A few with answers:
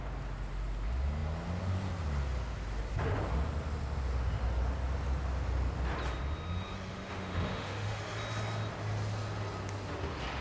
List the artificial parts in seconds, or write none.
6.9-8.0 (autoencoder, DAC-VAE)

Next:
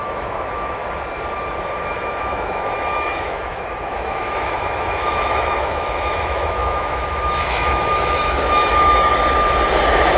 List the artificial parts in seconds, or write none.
0.0-0.8 (autoencoder, DAC-VAE); 1.9-9.1

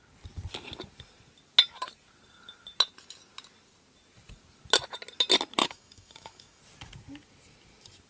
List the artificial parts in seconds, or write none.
5.6-6.6 (autoencoder, DAC-VAE)

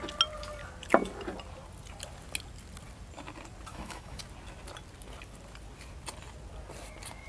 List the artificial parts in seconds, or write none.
3.7-4.2 (autoencoder, DAC-VAE)